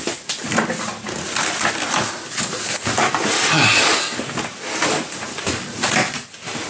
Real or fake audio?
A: real